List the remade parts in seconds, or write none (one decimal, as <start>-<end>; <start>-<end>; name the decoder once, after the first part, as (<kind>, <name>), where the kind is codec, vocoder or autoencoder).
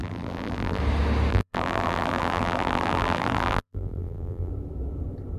0.0-0.8 (vocoder, BigVGAN v2); 1.3-4.5